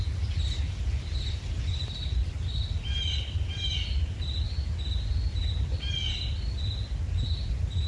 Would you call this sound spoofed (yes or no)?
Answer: no